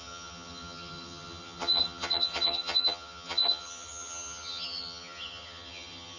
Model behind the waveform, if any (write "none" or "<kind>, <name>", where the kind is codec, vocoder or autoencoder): vocoder, HiFi-GAN